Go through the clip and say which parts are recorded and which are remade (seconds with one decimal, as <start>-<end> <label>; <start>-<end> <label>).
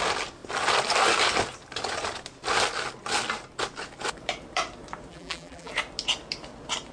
0.0-5.1 recorded; 5.1-5.7 remade; 5.7-6.9 recorded